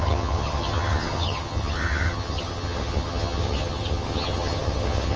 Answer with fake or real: fake